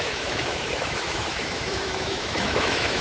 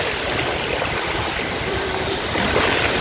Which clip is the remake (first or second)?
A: first